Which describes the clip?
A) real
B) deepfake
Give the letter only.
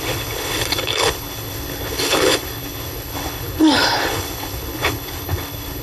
B